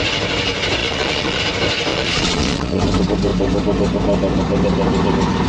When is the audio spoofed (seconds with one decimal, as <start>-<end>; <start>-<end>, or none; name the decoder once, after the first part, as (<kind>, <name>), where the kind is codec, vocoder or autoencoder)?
0.8-1.4 (vocoder, Vocos); 1.9-2.8